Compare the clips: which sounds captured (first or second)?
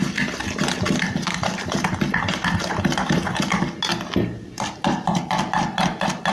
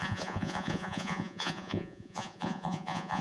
first